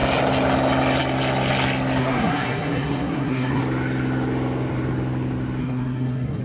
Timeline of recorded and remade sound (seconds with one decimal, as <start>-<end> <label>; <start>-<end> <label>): 0.0-2.0 recorded; 2.0-3.6 remade; 3.6-5.6 recorded; 5.6-6.4 remade

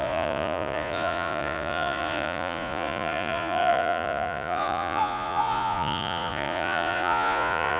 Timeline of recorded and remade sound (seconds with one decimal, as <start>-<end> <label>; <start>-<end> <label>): 0.0-7.8 remade

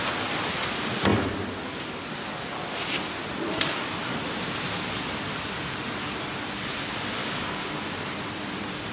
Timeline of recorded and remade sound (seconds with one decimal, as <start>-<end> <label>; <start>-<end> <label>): 0.0-7.2 recorded; 7.2-7.7 remade; 7.7-8.9 recorded